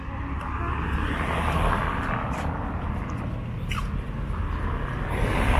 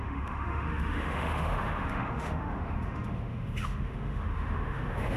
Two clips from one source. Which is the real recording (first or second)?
first